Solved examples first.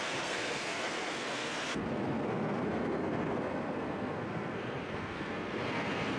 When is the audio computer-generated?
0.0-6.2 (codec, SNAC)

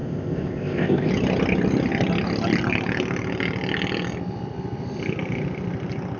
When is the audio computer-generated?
0.0-1.1 (codec, ZipCodec)

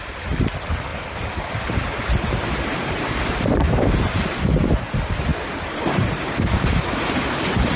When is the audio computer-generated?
0.9-3.9 (vocoder, BigVGAN v2); 5.3-7.2

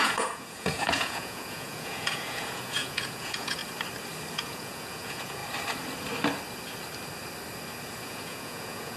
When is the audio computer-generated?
0.0-3.6 (vocoder, Vocos); 4.3-5.4; 8.0-9.0

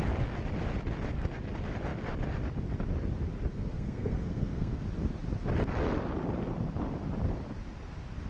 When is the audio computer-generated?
3.5-4.8 (codec, SNAC)

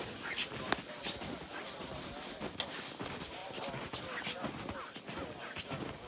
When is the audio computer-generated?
3.4-5.6 (vocoder, BigVGAN v2)

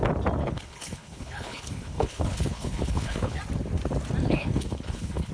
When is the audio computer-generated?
0.4-3.4 (codec, HILCodec); 4.2-5.3

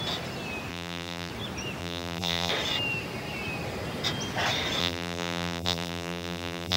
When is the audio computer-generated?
0.7-1.3 (vocoder, BigVGAN v2); 1.8-2.5; 4.8-6.8